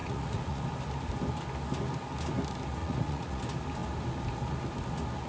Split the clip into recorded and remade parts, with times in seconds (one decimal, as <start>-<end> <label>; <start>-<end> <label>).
0.0-0.6 remade; 0.6-2.8 recorded; 2.8-3.4 remade; 3.4-5.3 recorded